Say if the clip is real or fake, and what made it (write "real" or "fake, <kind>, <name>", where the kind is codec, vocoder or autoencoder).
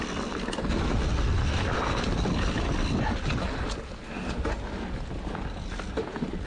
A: real